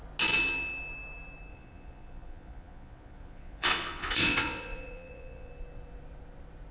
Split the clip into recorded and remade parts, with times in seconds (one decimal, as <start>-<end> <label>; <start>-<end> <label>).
0.0-1.5 recorded; 1.5-5.5 remade; 5.5-6.7 recorded